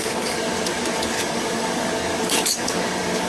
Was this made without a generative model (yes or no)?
no